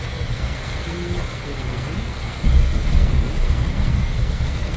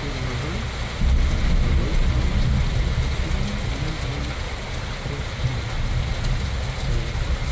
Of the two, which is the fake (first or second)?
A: first